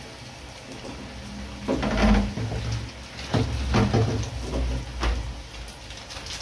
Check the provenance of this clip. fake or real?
real